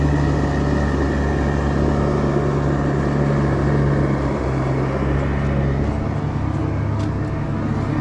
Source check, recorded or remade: recorded